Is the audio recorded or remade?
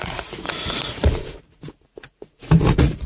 remade